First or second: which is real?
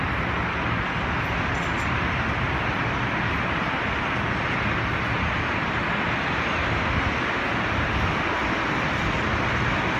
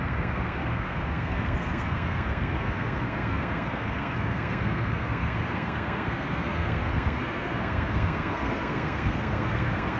first